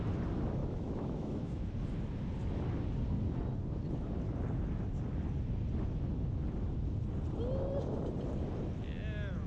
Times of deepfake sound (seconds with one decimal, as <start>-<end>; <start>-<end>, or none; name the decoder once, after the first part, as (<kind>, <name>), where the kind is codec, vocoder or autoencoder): 0.6-1.6 (autoencoder, DAC-VAE)